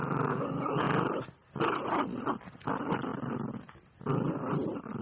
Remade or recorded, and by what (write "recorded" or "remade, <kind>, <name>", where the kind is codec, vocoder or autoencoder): recorded